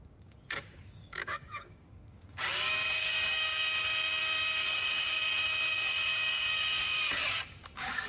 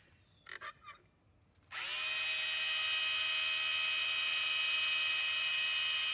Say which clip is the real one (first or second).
second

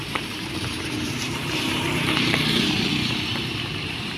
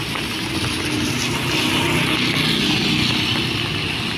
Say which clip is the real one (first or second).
second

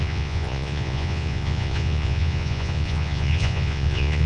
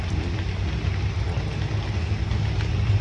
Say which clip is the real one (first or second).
second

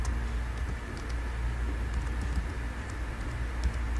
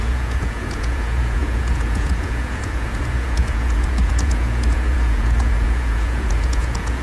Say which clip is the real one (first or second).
first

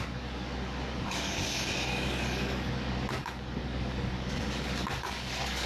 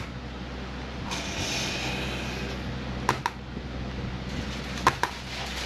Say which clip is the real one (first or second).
second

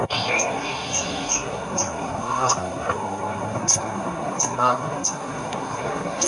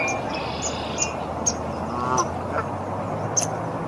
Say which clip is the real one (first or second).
second